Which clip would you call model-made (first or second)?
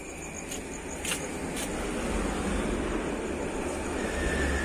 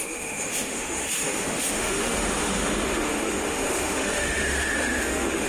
second